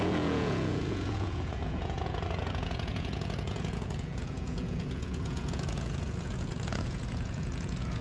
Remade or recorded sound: remade